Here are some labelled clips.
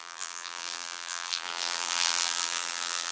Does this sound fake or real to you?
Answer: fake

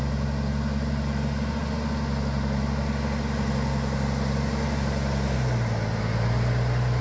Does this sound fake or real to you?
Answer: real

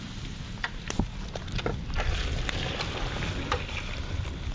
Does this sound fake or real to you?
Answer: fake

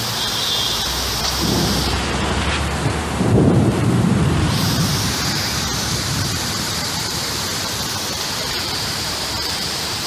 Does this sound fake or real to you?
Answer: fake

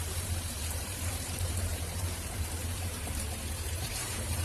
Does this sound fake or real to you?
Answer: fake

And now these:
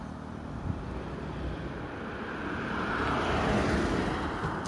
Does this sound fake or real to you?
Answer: real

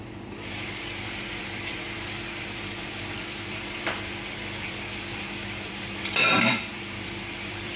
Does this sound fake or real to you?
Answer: fake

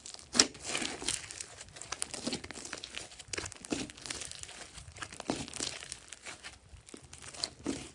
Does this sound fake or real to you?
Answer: real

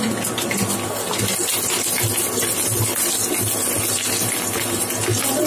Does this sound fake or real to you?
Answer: real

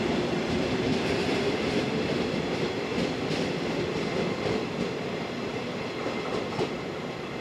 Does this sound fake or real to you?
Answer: fake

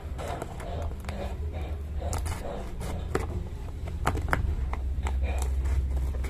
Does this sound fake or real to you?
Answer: real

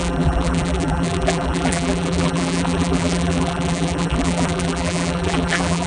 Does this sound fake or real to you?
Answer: fake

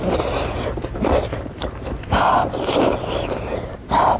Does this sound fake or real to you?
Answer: fake